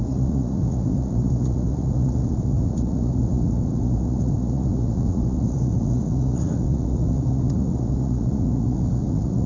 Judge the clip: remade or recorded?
remade